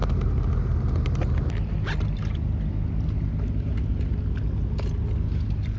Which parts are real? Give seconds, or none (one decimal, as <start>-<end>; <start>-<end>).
0.0-5.8